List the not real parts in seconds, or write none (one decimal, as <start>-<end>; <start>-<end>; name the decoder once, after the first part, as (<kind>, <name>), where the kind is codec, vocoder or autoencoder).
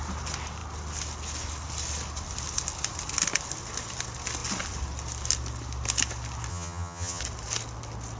6.5-7.2 (vocoder, HiFi-GAN)